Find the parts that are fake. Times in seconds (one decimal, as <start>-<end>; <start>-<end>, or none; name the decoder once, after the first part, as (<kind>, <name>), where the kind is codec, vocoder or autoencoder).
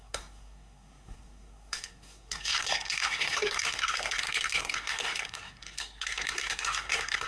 0.0-7.3 (codec, SNAC)